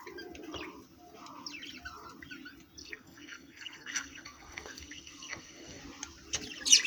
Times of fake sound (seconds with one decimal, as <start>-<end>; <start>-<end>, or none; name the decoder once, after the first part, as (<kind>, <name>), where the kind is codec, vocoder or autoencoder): 2.8-5.8 (codec, SNAC)